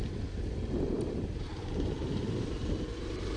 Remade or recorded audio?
remade